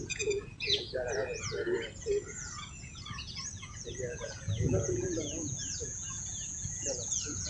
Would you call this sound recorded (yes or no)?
no